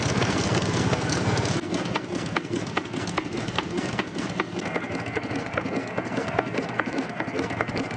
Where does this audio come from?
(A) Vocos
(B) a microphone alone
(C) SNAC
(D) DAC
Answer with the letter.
C